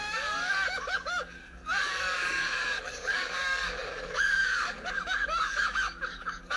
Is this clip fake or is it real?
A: fake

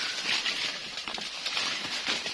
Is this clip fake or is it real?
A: real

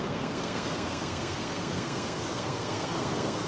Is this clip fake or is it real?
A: fake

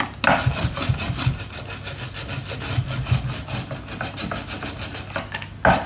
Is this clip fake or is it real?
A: real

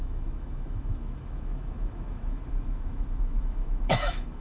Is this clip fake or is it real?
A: fake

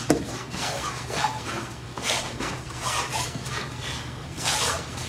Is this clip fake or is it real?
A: fake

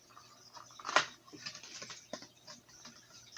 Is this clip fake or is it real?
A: real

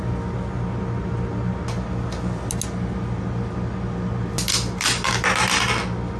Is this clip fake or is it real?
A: real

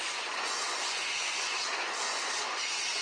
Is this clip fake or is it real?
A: fake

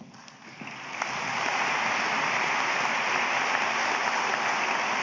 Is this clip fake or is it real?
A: real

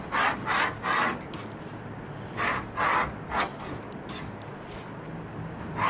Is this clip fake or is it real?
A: real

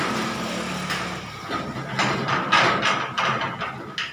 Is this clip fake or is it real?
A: real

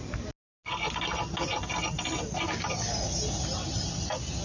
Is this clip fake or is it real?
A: real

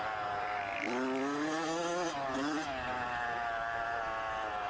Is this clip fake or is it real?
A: real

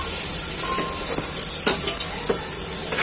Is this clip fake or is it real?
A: real